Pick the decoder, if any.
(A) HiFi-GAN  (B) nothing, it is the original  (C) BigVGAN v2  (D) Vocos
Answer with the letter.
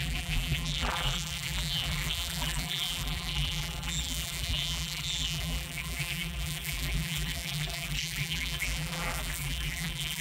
C